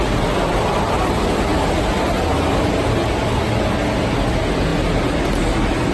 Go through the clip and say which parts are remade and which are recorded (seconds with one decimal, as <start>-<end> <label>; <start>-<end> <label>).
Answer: 0.0-5.9 recorded